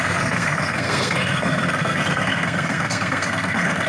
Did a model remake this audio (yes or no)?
yes